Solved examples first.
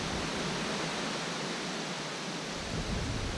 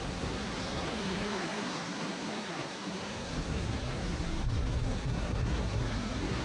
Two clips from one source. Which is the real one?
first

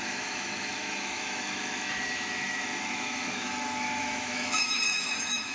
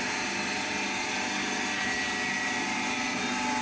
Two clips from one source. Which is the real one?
second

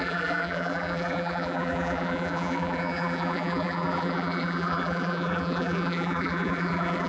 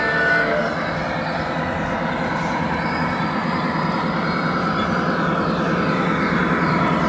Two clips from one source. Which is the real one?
second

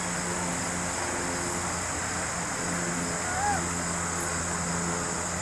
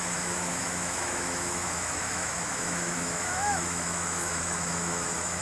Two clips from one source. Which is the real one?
first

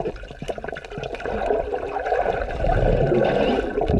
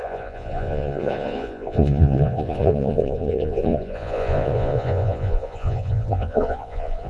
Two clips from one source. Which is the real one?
first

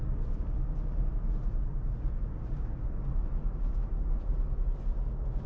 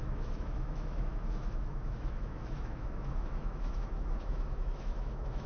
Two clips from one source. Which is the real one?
first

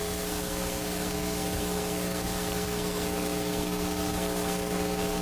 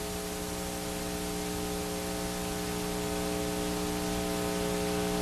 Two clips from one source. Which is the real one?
second